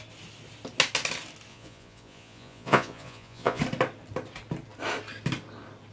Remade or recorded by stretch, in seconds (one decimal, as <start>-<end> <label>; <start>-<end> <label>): 0.0-1.5 recorded; 1.5-3.6 remade; 3.6-5.9 recorded